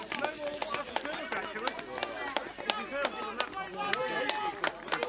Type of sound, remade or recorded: recorded